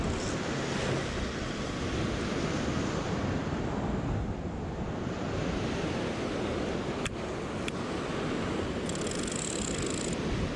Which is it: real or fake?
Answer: real